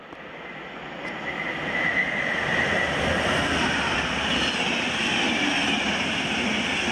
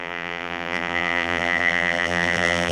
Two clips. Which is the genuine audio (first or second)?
first